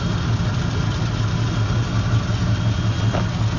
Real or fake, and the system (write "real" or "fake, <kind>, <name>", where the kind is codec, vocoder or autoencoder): real